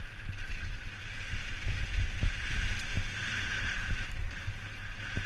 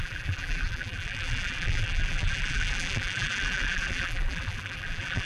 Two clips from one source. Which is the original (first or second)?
first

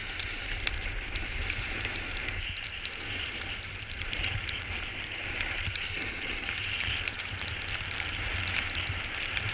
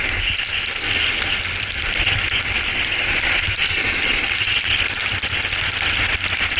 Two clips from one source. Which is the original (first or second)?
second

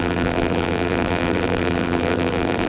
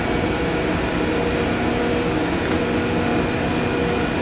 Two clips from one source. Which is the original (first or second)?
second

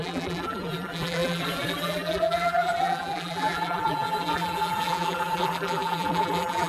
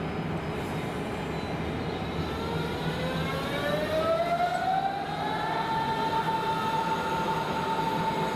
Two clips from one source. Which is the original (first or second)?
second